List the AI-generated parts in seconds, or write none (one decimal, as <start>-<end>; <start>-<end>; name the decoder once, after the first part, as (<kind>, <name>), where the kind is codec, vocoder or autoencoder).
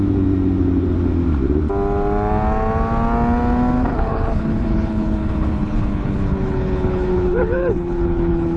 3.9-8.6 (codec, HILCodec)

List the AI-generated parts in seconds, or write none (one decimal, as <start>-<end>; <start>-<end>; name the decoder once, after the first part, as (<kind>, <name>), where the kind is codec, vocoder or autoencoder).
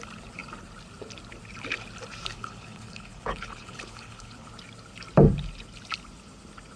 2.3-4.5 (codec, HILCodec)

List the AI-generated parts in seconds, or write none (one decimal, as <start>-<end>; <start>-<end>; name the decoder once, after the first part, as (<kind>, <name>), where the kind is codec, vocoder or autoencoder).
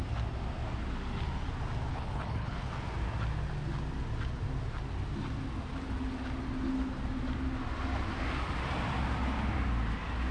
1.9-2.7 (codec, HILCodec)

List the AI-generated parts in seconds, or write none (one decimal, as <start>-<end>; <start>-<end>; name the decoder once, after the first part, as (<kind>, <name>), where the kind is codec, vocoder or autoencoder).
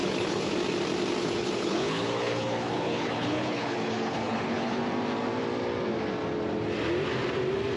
0.0-0.5 (codec, HILCodec); 1.2-4.8